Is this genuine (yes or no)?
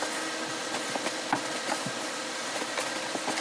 yes